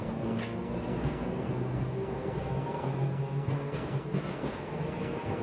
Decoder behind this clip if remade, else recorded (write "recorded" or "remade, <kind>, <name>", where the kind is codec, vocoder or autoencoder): remade, codec, SNAC